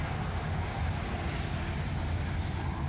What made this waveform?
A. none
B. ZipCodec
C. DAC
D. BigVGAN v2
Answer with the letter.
A